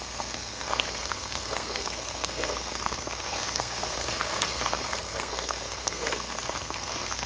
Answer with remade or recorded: remade